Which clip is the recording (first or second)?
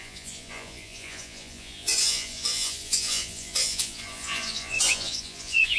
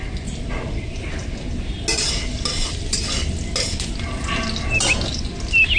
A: second